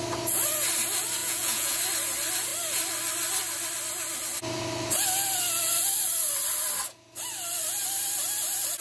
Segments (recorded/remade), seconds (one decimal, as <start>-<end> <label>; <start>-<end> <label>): 0.0-1.2 recorded; 1.2-1.8 remade; 1.8-8.8 recorded